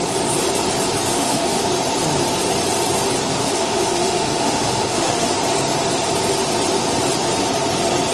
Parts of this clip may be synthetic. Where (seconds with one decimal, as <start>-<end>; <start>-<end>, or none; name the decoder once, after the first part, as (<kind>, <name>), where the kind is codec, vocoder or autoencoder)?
1.1-1.7 (autoencoder, DAC-VAE); 3.3-5.3